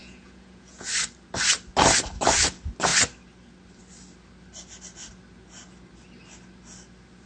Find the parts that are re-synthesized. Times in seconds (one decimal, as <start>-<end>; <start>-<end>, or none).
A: 0.0-0.9